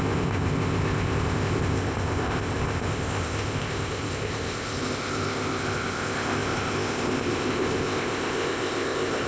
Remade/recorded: remade